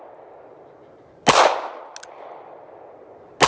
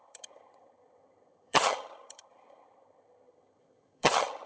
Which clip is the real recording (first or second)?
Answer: first